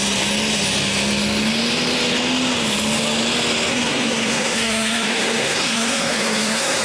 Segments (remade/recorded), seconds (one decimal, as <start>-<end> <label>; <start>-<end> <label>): 0.0-3.7 recorded; 3.7-6.8 remade